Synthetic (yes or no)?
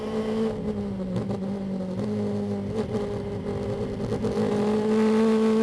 no